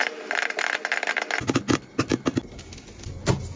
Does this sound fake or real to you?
real